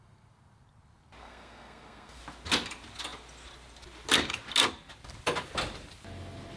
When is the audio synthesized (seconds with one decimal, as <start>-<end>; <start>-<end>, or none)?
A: 1.2-2.2